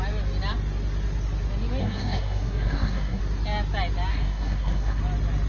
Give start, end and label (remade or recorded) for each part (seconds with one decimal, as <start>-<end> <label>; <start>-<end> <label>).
0.0-1.8 recorded; 1.8-3.2 remade; 3.2-4.1 recorded; 4.1-5.0 remade; 5.0-5.5 recorded